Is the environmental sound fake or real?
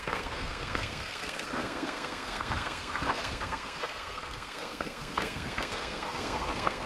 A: fake